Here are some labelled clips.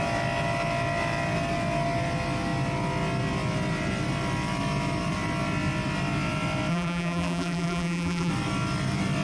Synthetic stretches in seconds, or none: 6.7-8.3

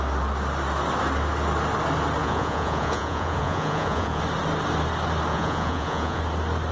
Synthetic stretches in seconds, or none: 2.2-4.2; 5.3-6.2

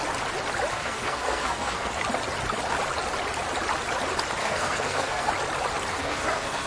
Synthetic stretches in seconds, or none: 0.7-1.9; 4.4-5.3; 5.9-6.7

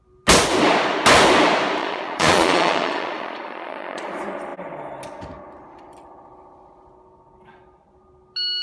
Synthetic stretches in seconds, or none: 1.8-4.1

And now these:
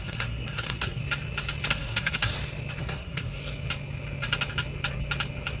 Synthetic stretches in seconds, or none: 0.0-1.0; 1.7-2.3; 2.8-3.4

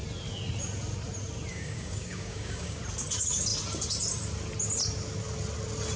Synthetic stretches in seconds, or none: 1.5-2.8